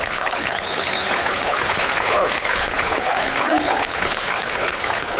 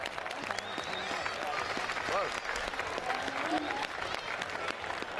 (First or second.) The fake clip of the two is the first